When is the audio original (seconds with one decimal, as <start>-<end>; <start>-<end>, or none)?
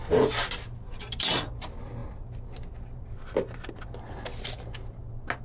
0.0-5.4